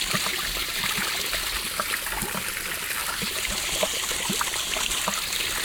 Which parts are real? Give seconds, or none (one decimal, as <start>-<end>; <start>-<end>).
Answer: 0.0-0.6; 1.1-3.0; 4.2-5.6

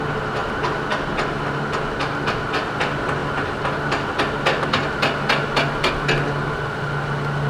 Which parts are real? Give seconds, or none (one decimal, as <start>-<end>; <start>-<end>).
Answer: 0.0-7.5